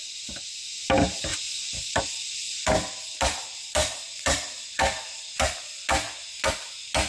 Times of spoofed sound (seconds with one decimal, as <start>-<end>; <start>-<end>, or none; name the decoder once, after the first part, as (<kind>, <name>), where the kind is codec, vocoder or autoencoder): 1.3-5.6 (vocoder, BigVGAN v2)